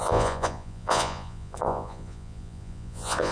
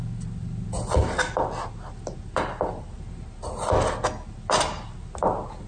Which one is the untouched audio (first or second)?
second